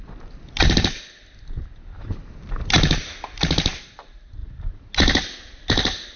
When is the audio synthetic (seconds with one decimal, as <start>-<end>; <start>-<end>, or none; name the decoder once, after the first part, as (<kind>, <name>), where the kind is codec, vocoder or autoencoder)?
none